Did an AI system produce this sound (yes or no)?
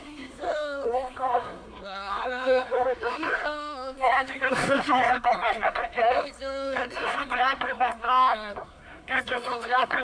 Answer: yes